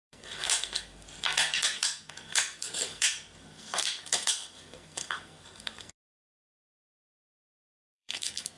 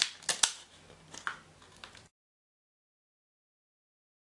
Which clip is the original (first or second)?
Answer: second